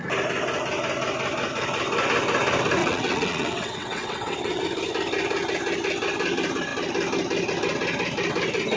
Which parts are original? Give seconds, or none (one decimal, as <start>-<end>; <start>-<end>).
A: 0.0-2.8; 4.6-8.8